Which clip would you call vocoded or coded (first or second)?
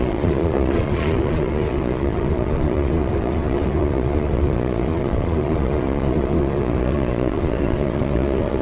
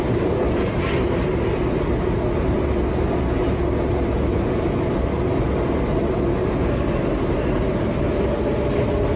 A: first